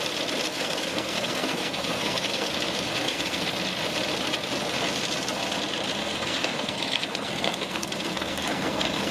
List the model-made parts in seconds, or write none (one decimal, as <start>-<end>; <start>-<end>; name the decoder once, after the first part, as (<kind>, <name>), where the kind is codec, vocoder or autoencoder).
0.5-2.5 (codec, SNAC); 2.9-3.4; 6.0-9.1